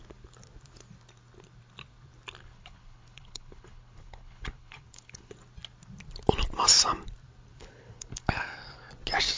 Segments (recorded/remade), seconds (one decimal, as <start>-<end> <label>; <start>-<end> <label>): 0.0-2.4 recorded; 2.4-5.3 remade; 5.3-7.5 recorded; 7.5-8.9 remade; 8.9-9.4 recorded